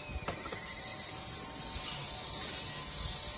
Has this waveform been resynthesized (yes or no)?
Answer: no